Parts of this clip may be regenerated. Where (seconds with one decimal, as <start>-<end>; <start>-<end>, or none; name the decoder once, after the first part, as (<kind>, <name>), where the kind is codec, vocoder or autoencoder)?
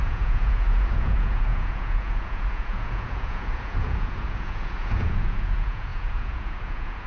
0.0-7.1 (vocoder, Vocos)